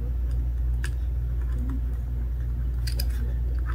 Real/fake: real